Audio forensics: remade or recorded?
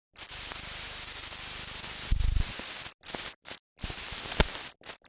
recorded